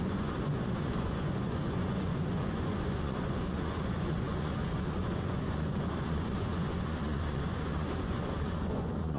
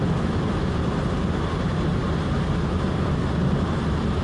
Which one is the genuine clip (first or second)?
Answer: second